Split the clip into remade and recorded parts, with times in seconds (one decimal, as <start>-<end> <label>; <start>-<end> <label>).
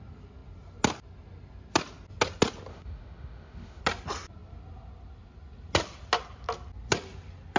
0.0-2.7 recorded; 2.7-3.8 remade; 3.8-7.6 recorded